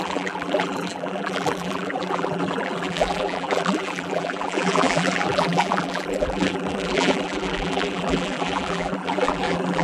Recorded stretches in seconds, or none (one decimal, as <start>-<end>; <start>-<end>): none